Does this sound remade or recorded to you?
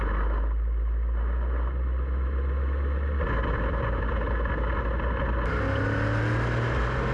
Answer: recorded